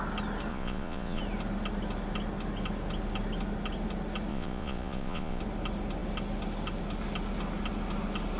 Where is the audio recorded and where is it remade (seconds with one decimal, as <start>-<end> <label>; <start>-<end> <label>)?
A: 0.0-0.5 recorded; 0.5-1.2 remade; 1.2-4.3 recorded; 4.3-5.4 remade; 5.4-8.4 recorded